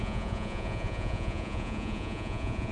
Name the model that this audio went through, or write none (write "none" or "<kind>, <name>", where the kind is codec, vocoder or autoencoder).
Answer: vocoder, Vocos